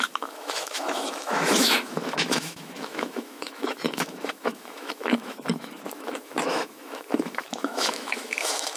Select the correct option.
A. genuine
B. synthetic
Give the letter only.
B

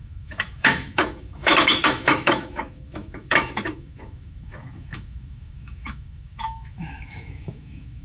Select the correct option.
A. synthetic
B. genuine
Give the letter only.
A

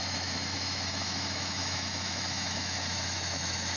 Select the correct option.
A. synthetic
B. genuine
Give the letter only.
A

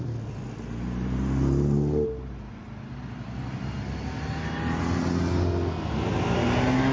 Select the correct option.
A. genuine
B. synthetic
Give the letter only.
A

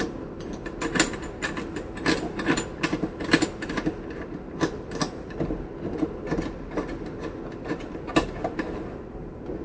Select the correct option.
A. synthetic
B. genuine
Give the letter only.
B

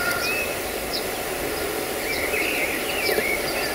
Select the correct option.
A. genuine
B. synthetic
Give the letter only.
A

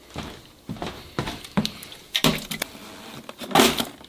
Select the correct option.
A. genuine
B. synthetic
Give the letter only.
A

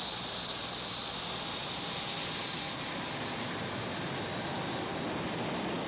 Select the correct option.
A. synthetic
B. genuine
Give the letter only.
B